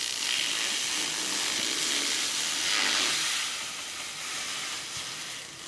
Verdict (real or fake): real